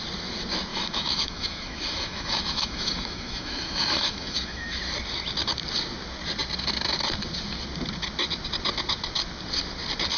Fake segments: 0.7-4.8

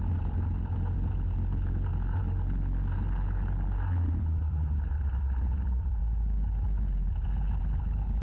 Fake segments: 0.0-1.1; 4.2-6.0; 7.6-8.2

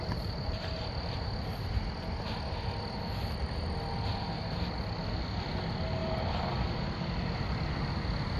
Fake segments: none

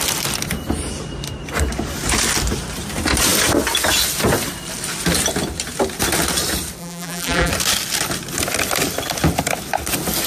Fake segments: 6.8-7.5

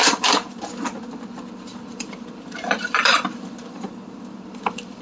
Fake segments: 0.0-0.7; 1.7-5.0

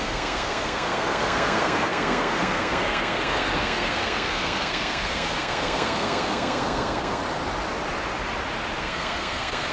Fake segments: 0.0-7.2; 8.8-9.7

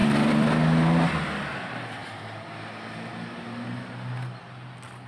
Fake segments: 0.0-0.5